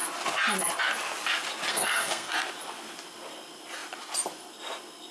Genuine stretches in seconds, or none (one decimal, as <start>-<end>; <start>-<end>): 0.0-1.7; 2.3-5.1